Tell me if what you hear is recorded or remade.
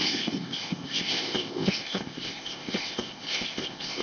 remade